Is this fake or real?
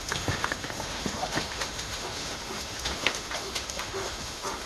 fake